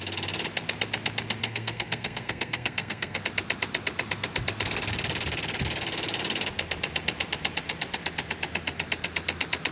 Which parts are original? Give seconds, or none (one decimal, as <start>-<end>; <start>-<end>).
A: 0.0-1.4; 3.2-9.7